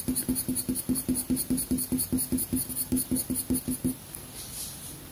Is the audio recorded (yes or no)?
yes